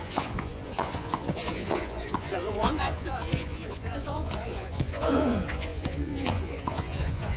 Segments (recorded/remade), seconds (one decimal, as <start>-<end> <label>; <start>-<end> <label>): 0.0-7.4 remade